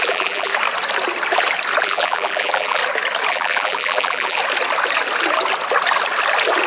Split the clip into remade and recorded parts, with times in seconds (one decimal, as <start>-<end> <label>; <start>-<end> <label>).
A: 0.0-0.5 remade; 0.5-1.8 recorded; 1.8-2.8 remade; 2.8-3.3 recorded; 3.3-4.4 remade; 4.4-6.7 recorded

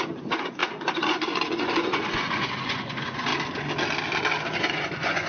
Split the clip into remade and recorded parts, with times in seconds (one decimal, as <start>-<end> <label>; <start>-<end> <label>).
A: 0.0-3.3 remade; 3.3-4.6 recorded; 4.6-5.3 remade